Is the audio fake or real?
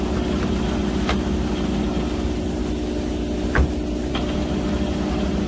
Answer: real